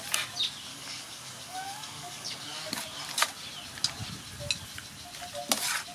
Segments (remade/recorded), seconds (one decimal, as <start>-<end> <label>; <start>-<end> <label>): 0.0-0.7 recorded; 0.7-2.7 remade; 2.7-5.9 recorded